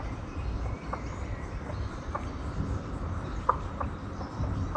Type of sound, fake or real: fake